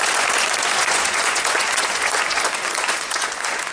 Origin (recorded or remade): remade